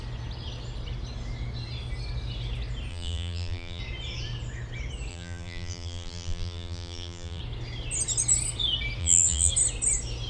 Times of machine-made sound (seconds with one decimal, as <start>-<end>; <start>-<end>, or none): 2.9-3.8; 5.1-7.4; 9.0-9.5